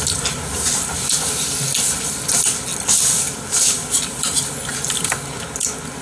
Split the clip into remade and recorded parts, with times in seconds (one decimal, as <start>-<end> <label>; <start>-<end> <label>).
0.0-6.0 recorded